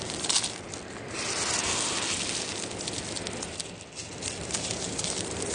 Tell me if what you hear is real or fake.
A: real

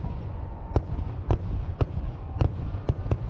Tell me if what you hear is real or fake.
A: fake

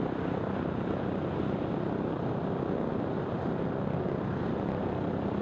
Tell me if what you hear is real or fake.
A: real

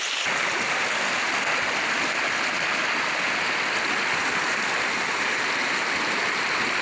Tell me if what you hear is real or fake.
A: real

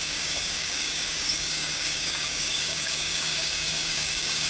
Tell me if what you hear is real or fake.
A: fake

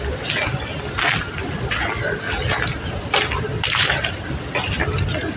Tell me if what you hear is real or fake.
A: real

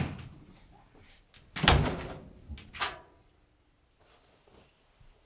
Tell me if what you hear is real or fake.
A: real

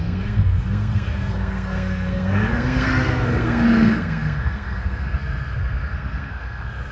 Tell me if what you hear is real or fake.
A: fake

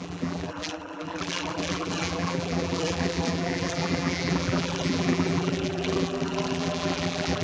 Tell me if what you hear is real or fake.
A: fake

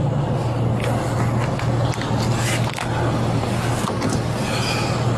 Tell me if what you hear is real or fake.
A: real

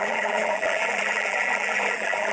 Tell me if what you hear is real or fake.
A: fake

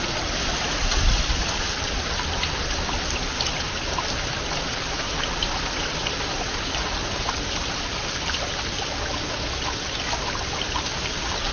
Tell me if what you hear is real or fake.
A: real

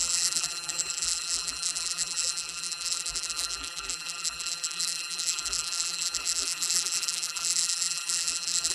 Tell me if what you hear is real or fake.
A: fake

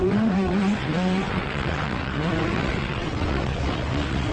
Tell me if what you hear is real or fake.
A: fake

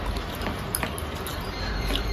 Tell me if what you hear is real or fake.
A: fake